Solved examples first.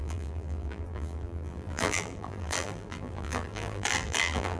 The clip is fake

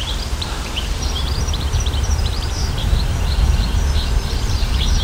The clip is fake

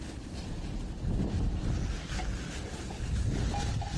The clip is real